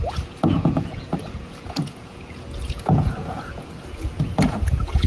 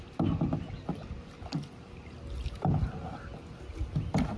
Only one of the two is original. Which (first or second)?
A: second